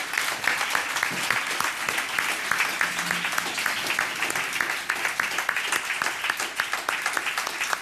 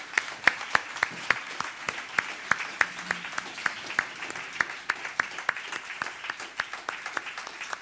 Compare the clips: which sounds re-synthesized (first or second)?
second